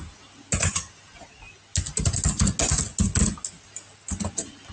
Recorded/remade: recorded